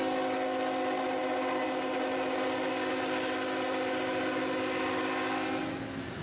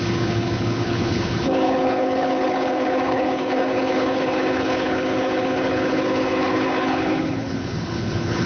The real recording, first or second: first